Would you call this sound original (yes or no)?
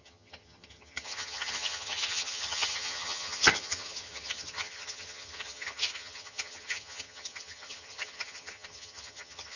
no